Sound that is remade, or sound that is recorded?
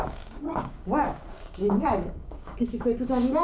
remade